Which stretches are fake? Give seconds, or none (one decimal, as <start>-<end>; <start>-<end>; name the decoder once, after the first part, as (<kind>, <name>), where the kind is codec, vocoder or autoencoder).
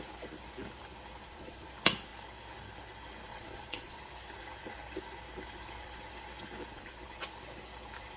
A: 1.2-1.7 (vocoder, Vocos); 3.3-4.0